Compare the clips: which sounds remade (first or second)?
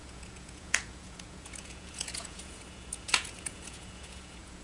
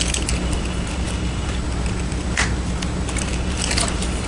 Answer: first